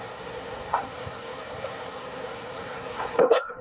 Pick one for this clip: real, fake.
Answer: fake